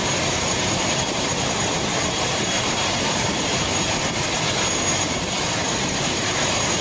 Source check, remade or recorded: remade